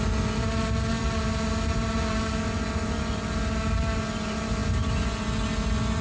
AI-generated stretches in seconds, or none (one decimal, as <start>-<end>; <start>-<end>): none